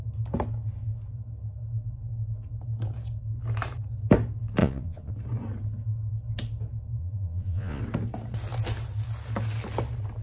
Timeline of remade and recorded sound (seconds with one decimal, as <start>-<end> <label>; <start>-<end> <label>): 0.0-4.6 recorded; 4.6-5.1 remade; 5.1-7.0 recorded; 7.0-7.8 remade; 7.8-10.2 recorded